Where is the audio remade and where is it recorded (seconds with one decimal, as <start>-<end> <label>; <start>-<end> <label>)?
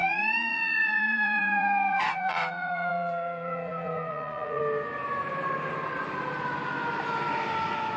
0.0-4.6 remade; 4.6-8.0 recorded